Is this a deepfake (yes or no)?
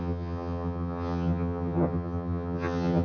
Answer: yes